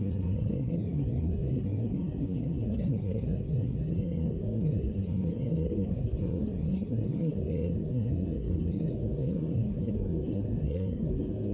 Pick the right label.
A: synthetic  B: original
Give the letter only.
A